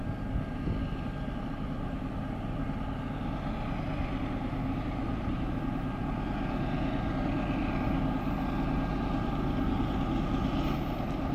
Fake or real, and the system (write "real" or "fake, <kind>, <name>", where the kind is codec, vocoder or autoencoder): real